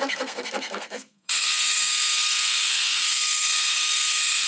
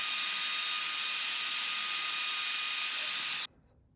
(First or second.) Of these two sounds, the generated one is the first